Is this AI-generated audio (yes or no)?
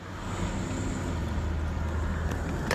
no